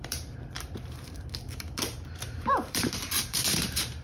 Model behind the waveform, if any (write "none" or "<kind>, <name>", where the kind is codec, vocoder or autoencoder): vocoder, BigVGAN v2